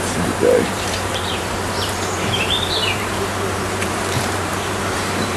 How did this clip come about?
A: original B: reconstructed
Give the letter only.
B